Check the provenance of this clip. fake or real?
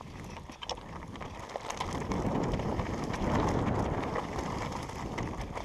real